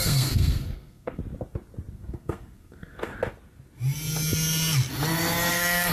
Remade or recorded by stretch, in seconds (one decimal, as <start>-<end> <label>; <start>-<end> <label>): 0.0-1.2 remade; 1.2-1.9 recorded; 1.9-3.1 remade; 3.1-5.5 recorded; 5.5-5.9 remade